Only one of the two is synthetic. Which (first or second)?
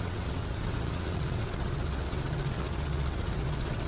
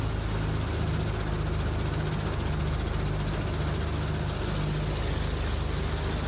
first